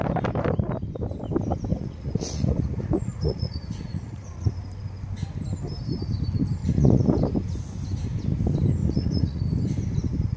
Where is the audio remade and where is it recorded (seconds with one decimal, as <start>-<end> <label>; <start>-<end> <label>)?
0.0-1.7 recorded; 1.7-4.5 remade; 4.5-6.6 recorded; 6.6-7.2 remade; 7.2-8.8 recorded; 8.8-9.4 remade; 9.4-10.4 recorded